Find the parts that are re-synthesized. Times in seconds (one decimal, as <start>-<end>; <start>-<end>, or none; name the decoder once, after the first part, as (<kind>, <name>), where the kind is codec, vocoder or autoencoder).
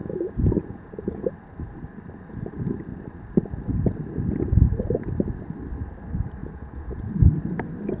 0.0-1.3 (vocoder, Vocos); 6.4-7.1